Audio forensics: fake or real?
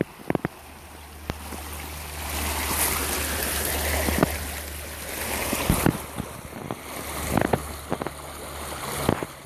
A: real